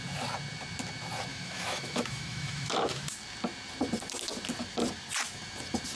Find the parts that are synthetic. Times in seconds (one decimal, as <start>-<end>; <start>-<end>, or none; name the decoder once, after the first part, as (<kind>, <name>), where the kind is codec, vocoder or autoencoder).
1.3-3.1 (autoencoder, DAC-VAE)